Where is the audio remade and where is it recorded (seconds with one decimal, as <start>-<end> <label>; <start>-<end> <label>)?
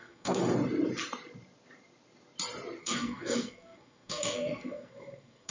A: 0.0-0.4 remade; 0.4-2.8 recorded; 2.8-5.5 remade